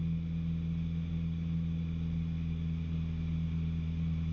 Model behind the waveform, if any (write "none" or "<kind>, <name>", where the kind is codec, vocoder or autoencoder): none